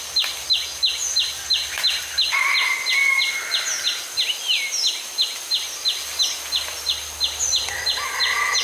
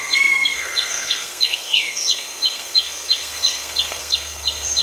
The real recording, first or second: first